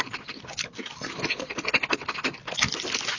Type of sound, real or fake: real